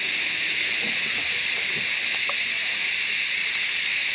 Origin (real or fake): real